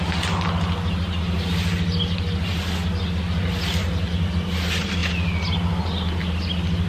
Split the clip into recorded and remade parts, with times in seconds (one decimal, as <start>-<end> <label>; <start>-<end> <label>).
0.0-6.9 recorded